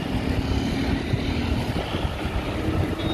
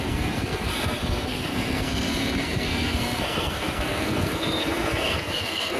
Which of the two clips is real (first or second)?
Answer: first